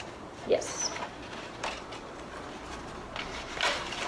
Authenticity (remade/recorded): recorded